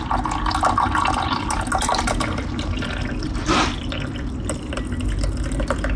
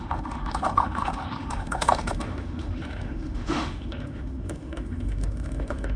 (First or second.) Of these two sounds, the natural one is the first